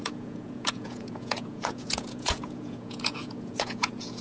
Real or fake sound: fake